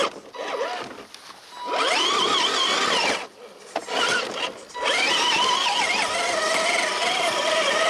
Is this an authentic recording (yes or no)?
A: yes